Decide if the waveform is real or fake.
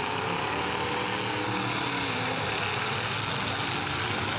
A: real